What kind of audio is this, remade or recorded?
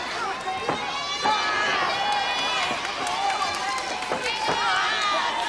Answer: recorded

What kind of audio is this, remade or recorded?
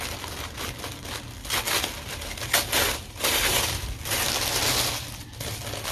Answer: recorded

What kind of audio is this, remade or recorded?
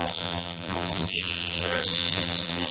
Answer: remade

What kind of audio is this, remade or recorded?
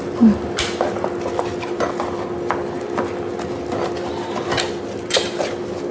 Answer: recorded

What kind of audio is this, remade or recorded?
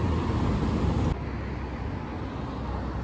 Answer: recorded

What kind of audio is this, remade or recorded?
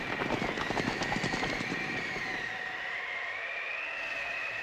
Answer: recorded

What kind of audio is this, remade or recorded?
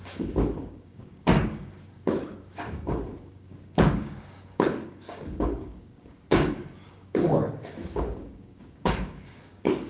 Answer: remade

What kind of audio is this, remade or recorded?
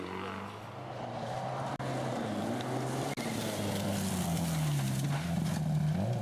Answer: recorded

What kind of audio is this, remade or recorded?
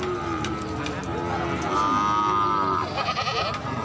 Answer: recorded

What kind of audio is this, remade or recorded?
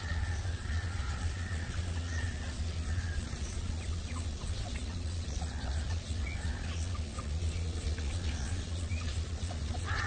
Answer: remade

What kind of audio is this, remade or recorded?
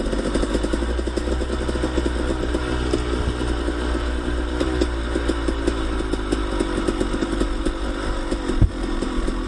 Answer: recorded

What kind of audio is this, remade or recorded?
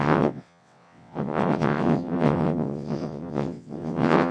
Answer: remade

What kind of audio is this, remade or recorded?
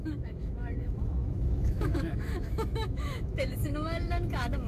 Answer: remade